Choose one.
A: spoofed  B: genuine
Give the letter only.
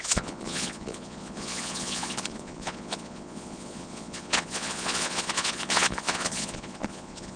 A